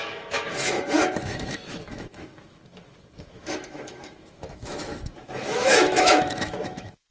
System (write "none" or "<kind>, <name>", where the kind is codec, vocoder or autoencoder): autoencoder, DAC-VAE